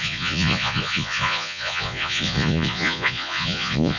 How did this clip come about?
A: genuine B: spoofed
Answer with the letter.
B